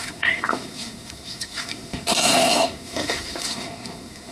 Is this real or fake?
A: fake